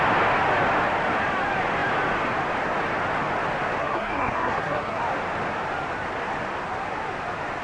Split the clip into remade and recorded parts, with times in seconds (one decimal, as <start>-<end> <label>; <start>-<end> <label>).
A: 0.0-3.8 recorded; 3.8-5.0 remade; 5.0-7.6 recorded